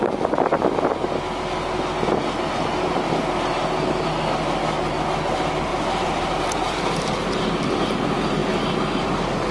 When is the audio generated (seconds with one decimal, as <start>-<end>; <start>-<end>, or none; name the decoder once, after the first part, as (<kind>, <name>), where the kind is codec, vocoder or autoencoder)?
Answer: 5.7-7.4 (vocoder, BigVGAN v2)